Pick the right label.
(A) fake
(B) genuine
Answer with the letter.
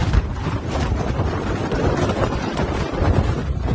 A